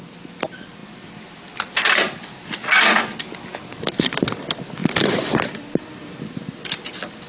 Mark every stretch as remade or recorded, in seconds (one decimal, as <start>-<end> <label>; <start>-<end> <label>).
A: 0.0-7.3 recorded